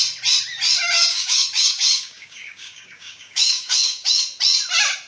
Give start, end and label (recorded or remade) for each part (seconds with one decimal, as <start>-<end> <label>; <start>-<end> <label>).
0.0-1.1 recorded; 1.1-4.2 remade; 4.2-5.1 recorded